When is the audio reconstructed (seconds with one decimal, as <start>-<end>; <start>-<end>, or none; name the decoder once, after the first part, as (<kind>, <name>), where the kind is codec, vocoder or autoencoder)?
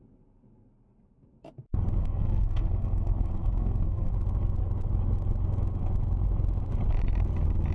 2.0-4.1 (codec, SNAC)